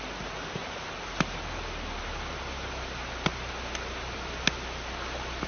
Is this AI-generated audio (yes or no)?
no